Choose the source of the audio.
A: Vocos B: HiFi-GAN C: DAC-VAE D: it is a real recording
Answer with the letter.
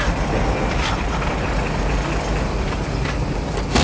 D